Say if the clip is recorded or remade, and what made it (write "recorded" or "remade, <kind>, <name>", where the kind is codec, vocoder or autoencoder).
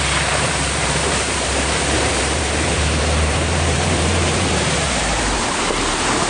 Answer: remade, vocoder, BigVGAN v2